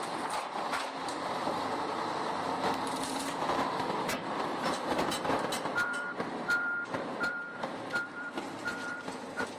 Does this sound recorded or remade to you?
remade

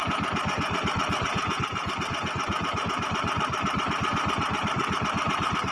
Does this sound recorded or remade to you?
remade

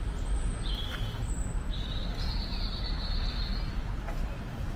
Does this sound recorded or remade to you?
recorded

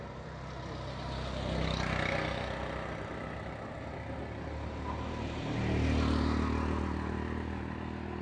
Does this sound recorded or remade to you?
recorded